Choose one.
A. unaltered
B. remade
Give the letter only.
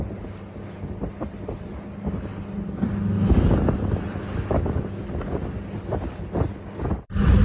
A